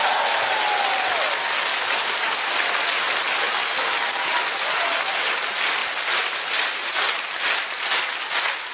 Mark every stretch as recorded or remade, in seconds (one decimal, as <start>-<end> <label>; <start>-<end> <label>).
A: 0.0-1.7 recorded; 1.7-2.5 remade; 2.5-8.7 recorded